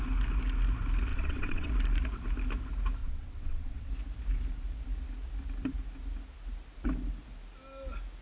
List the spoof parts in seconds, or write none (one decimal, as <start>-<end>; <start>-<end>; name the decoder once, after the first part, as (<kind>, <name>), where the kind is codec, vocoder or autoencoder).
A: 1.1-1.7 (vocoder, WaveNeXt); 3.0-3.9